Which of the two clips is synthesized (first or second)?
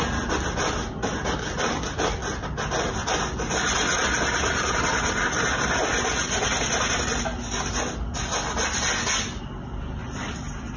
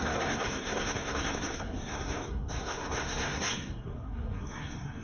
second